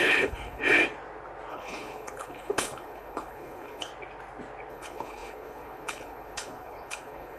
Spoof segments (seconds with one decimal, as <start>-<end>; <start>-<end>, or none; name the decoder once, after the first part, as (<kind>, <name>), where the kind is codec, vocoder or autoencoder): 0.0-0.6 (codec, HILCodec); 1.5-3.9; 4.7-7.4